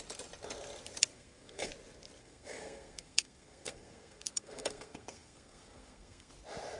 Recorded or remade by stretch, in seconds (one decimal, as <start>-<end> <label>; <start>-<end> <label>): 0.0-1.1 recorded; 1.1-1.7 remade; 1.7-2.2 recorded; 2.2-6.3 remade; 6.3-6.8 recorded